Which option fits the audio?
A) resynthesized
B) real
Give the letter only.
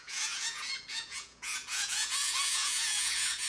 A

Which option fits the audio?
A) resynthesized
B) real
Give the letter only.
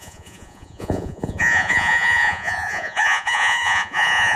A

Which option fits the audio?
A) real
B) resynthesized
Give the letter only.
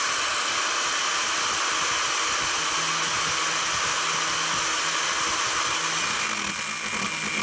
A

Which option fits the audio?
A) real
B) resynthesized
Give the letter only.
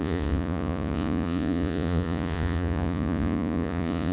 B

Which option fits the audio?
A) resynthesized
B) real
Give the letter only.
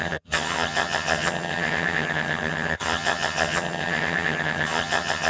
A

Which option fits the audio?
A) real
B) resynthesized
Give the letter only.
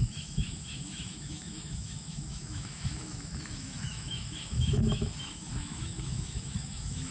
B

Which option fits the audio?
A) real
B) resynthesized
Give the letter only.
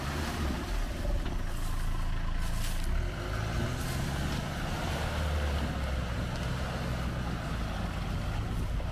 A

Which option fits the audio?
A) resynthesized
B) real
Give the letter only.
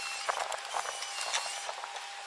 B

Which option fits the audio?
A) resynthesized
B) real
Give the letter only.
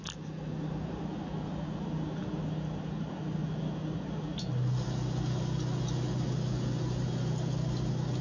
B